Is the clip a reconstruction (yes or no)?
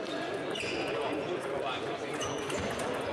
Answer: yes